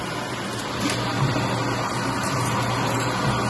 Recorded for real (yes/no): yes